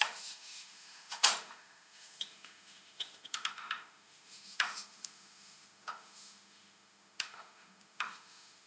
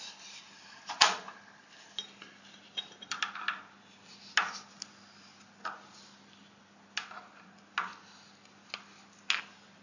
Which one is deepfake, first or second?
first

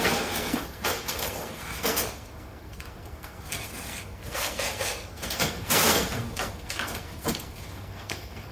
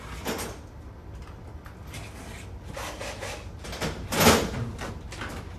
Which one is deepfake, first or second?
first